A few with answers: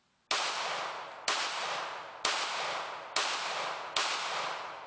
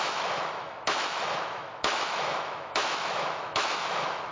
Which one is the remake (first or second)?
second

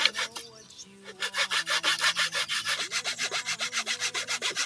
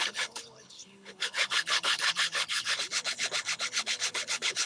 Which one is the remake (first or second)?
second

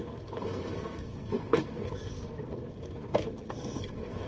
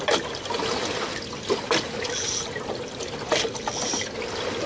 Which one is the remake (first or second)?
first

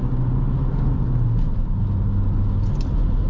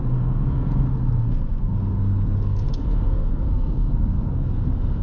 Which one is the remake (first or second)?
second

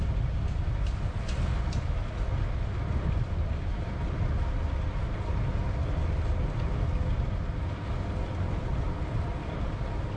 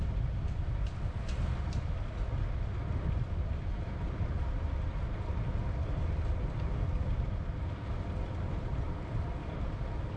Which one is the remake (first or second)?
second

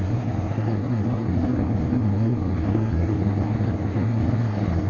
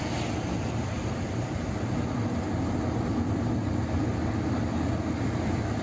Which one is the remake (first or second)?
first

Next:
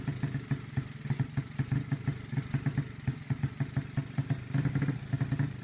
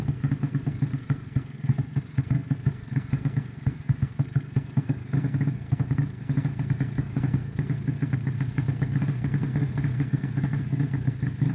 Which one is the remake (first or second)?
second